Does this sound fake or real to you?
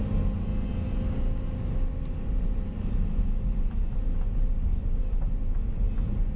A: real